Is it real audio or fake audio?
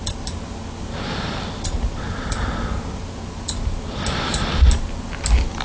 real